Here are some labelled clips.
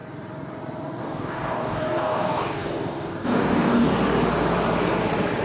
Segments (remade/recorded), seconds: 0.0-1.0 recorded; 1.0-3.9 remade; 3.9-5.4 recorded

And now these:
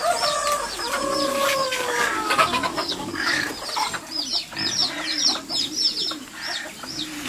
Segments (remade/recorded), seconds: 0.0-1.5 recorded; 1.5-3.5 remade; 3.5-7.3 recorded

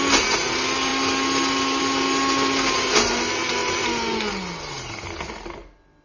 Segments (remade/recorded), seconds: 0.0-6.0 recorded

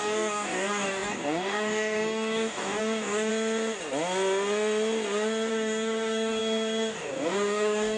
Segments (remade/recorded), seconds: 0.0-3.3 remade; 3.3-5.5 recorded; 5.5-8.0 remade